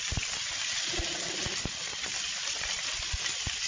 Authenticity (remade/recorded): recorded